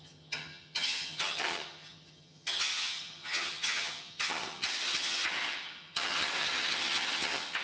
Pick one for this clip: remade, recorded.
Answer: remade